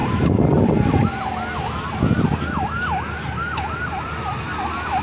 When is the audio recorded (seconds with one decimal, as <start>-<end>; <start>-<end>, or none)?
0.0-5.0